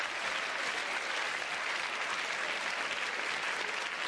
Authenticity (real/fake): real